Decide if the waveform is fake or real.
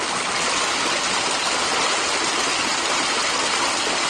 real